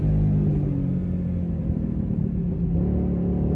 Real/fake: real